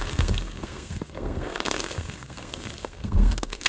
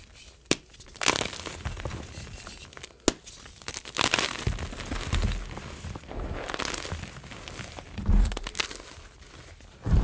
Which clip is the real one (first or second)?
second